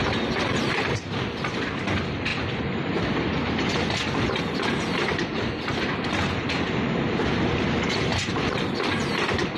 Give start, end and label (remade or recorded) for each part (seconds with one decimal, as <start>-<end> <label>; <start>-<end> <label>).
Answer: 0.0-2.3 recorded; 2.3-2.9 remade; 2.9-9.6 recorded